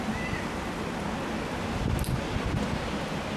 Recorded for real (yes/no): yes